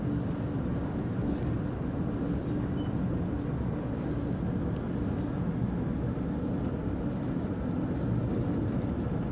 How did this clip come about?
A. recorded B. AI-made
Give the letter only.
A